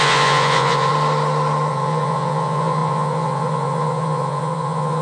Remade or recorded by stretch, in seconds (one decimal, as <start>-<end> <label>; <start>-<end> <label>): 0.0-0.9 remade; 0.9-1.7 recorded; 1.7-5.0 remade